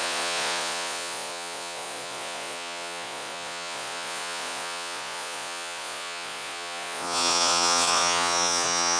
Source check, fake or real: fake